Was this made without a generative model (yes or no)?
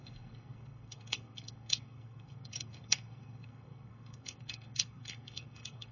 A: no